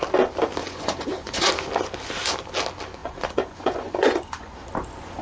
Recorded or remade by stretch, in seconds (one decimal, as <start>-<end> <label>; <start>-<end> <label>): 0.0-0.6 recorded; 0.6-1.5 remade; 1.5-3.0 recorded; 3.0-4.7 remade; 4.7-5.2 recorded